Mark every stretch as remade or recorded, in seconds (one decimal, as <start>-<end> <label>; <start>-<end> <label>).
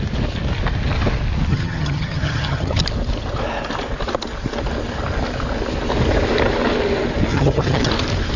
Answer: 0.0-1.5 recorded; 1.5-2.8 remade; 2.8-7.3 recorded; 7.3-7.9 remade; 7.9-8.4 recorded